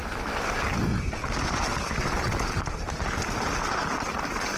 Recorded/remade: recorded